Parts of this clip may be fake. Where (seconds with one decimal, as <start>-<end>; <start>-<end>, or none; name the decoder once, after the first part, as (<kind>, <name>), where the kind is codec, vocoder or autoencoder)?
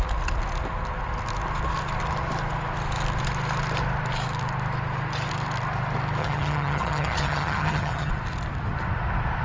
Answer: 6.2-8.1 (vocoder, HiFi-GAN)